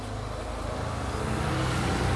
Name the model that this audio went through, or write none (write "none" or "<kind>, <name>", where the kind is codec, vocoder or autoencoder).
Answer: none